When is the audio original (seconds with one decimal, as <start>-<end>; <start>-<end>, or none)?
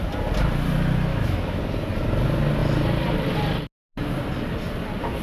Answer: 0.0-1.1; 1.6-5.2